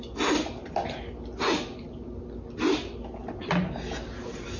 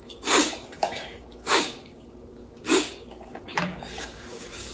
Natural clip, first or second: first